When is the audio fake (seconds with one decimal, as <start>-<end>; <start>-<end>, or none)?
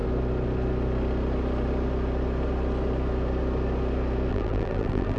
4.3-5.2